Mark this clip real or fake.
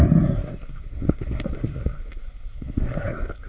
fake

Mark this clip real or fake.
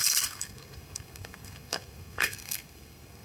fake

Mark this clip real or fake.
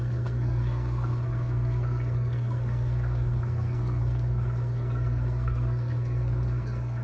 fake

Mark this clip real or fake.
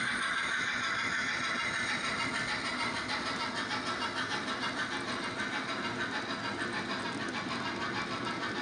real